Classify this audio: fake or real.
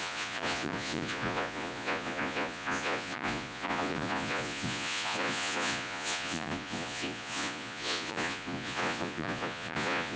fake